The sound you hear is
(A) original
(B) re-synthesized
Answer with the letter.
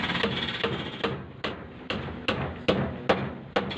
A